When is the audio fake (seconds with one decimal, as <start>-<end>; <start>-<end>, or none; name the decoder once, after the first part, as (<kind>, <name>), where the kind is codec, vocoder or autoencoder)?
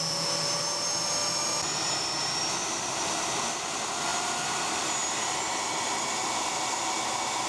none